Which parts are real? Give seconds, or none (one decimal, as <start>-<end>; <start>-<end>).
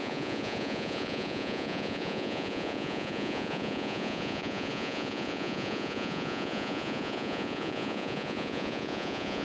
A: none